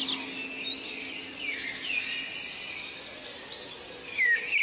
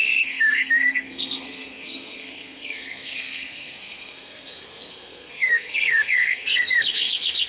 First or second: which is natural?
first